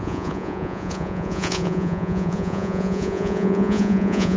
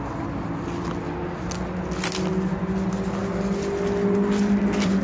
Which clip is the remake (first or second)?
first